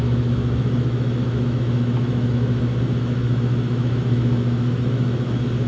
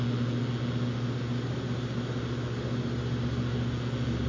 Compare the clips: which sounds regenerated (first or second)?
first